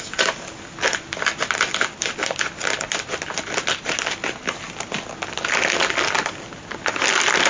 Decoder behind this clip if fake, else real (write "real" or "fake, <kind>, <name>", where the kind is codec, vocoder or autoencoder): real